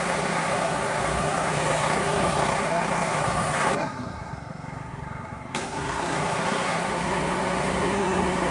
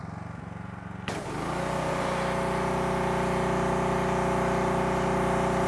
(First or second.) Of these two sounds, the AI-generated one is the first